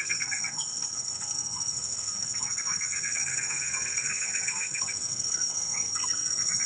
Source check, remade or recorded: remade